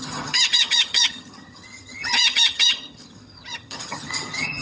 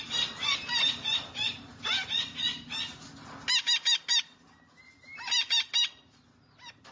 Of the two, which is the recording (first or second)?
second